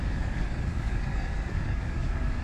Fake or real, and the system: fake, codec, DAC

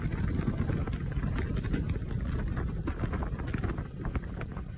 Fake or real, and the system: real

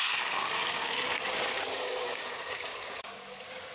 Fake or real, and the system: fake, codec, DAC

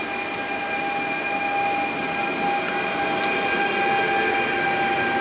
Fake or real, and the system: real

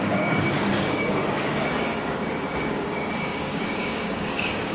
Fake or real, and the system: fake, codec, DAC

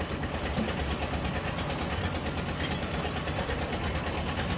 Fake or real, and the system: real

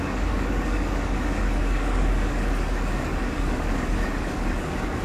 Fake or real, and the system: fake, codec, DAC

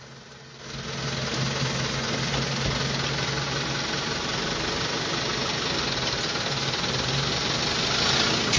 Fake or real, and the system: real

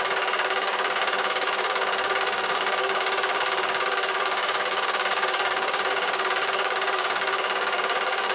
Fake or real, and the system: fake, codec, DAC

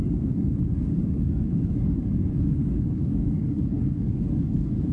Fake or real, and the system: fake, codec, DAC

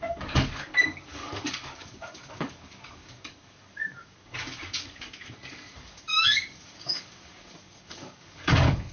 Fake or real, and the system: fake, codec, DAC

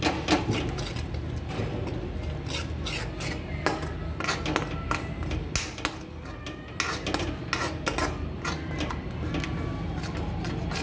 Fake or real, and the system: real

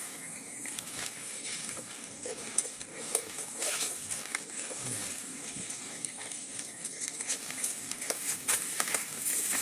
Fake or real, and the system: fake, codec, DAC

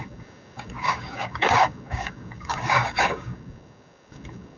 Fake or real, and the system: fake, codec, DAC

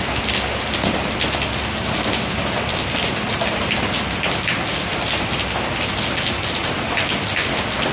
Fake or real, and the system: real